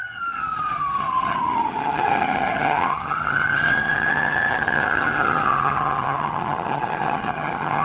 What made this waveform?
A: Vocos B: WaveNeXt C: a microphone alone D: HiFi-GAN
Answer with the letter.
D